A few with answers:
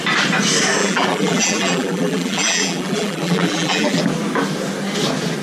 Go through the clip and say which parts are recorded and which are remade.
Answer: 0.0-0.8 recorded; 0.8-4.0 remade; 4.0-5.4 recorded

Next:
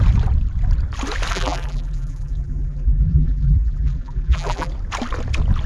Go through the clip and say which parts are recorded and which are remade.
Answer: 0.0-1.3 recorded; 1.3-4.7 remade; 4.7-5.7 recorded